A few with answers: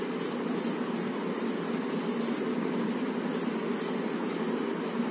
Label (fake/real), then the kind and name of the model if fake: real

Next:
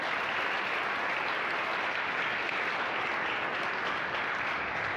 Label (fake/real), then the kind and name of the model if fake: real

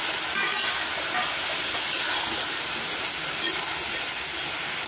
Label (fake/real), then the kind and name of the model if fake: real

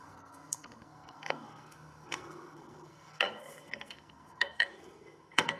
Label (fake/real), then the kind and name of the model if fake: fake, codec, SNAC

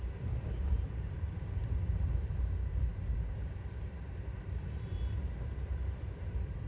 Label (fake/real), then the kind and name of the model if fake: fake, vocoder, BigVGAN v2